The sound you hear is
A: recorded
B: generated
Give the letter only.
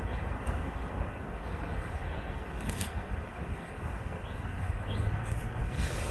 B